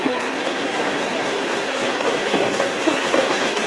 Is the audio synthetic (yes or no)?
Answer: yes